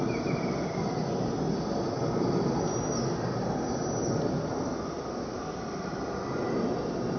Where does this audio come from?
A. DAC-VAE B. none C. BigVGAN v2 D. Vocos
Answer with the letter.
B